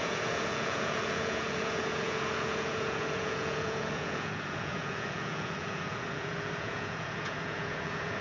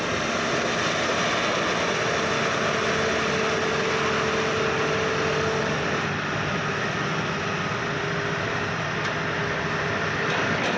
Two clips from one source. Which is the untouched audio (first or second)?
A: second